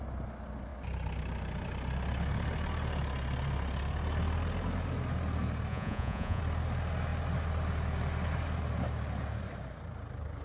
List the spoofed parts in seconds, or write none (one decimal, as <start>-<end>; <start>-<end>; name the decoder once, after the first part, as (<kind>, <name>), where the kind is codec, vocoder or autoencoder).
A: 5.7-6.4 (vocoder, Vocos)